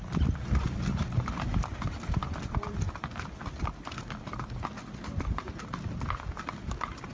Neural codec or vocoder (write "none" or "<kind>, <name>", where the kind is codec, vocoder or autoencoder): none